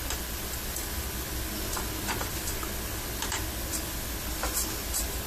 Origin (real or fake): real